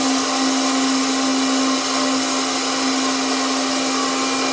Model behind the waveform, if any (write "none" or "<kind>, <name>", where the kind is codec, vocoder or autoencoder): none